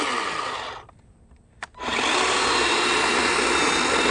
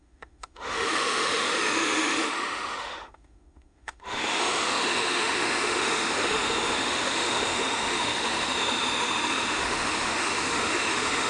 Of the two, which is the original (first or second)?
first